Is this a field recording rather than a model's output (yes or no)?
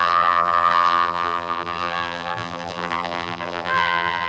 no